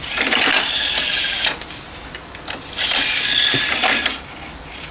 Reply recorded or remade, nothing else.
recorded